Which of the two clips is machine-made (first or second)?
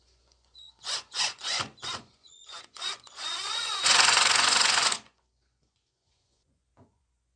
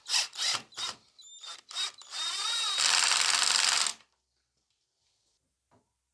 first